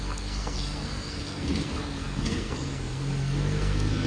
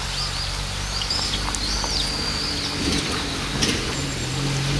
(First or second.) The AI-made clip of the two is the first